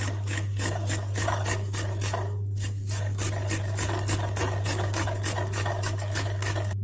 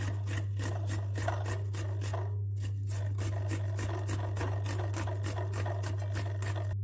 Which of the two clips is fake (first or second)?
first